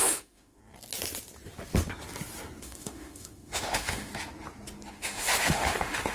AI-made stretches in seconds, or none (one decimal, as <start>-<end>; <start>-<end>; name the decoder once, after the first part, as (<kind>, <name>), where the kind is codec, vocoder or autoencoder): 0.0-0.6 (autoencoder, DAC-VAE); 2.6-4.1; 4.9-6.1